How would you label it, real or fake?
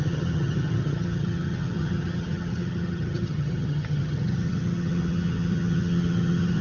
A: fake